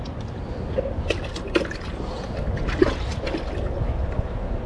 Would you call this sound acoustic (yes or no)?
yes